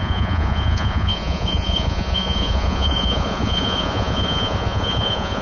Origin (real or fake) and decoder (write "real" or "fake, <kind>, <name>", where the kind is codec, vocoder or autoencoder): fake, vocoder, Vocos